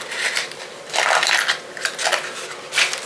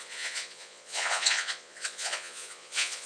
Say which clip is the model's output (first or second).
second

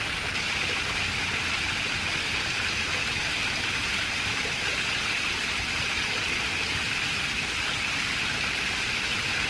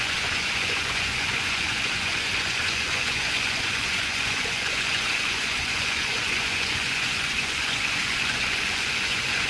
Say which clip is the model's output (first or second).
second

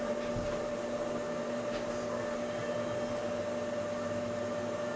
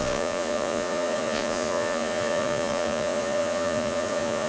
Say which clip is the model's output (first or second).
second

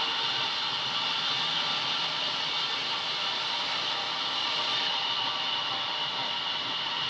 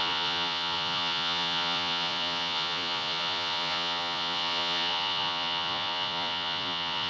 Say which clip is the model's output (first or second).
second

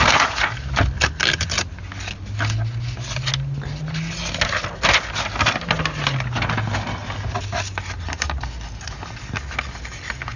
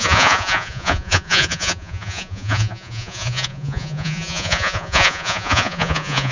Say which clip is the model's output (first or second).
second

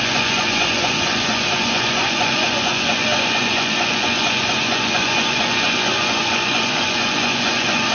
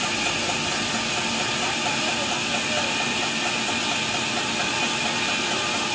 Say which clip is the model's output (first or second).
first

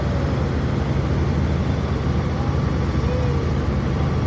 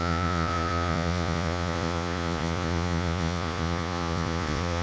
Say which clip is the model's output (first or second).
second